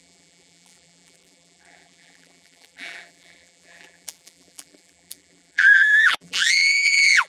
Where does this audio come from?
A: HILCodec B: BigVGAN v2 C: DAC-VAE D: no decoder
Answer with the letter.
B